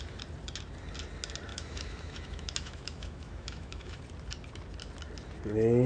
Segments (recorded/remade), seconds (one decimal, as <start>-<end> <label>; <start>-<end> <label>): 0.0-1.5 recorded; 1.5-4.0 remade; 4.0-5.9 recorded